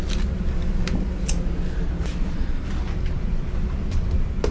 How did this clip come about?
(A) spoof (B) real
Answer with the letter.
B